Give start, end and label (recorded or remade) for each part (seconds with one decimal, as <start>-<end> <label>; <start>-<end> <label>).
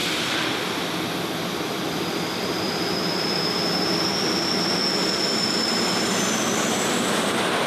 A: 0.0-4.2 remade; 4.2-7.7 recorded